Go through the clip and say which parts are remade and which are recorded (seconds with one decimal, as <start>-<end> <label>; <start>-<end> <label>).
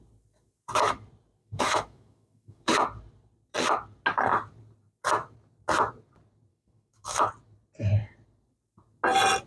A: 0.0-1.4 recorded; 1.4-2.7 remade; 2.7-6.5 recorded; 6.5-7.3 remade; 7.3-9.5 recorded